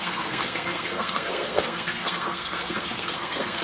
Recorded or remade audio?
remade